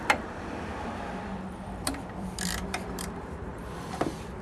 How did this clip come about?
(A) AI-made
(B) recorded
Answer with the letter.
A